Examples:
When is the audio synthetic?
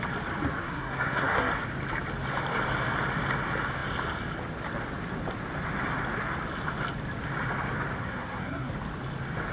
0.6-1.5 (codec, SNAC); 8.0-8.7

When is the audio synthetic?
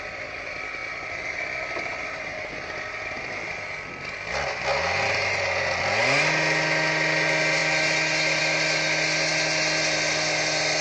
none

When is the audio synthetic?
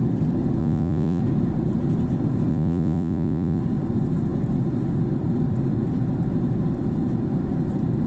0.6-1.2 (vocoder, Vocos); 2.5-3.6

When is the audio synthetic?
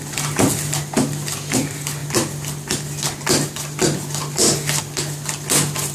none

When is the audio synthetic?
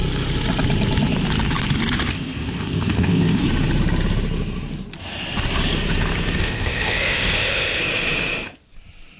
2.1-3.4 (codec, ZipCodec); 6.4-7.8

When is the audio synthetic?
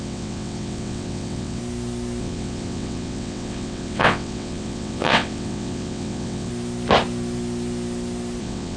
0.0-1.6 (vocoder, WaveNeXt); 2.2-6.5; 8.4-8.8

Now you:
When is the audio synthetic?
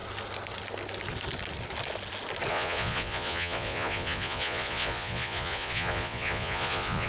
2.5-7.1 (vocoder, Vocos)